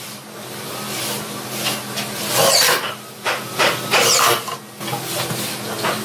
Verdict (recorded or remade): recorded